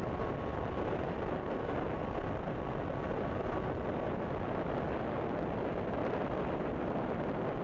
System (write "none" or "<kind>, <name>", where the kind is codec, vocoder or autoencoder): none